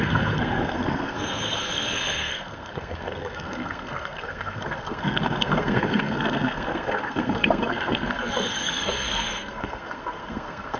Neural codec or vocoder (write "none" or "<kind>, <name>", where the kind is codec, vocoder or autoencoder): codec, SNAC